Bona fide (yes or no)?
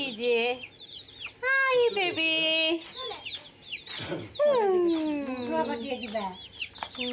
yes